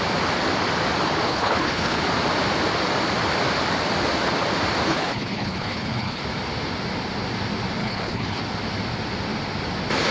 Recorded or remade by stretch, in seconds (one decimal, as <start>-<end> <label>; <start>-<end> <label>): 0.0-1.3 recorded; 1.3-2.0 remade; 2.0-4.9 recorded; 4.9-6.2 remade; 6.2-7.8 recorded; 7.8-8.4 remade; 8.4-10.1 recorded